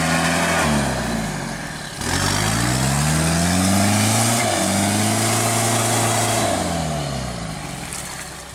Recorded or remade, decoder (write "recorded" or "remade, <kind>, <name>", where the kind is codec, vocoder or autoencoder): recorded